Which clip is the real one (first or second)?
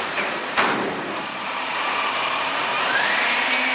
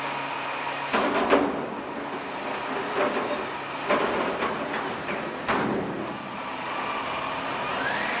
second